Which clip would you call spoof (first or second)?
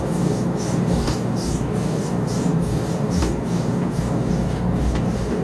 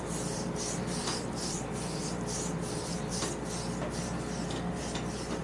first